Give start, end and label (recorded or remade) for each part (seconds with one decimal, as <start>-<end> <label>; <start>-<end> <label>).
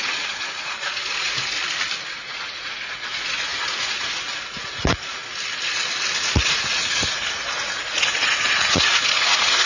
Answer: 0.0-1.6 remade; 1.6-2.1 recorded; 2.1-5.2 remade; 5.2-6.2 recorded; 6.2-9.7 remade